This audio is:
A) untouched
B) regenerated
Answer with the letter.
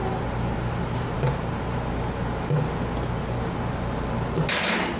A